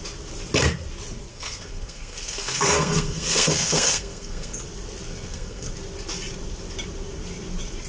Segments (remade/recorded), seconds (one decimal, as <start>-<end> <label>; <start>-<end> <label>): 0.0-1.3 recorded; 1.3-4.6 remade; 4.6-5.1 recorded; 5.1-5.7 remade; 5.7-7.9 recorded